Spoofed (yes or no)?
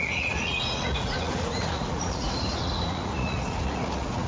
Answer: yes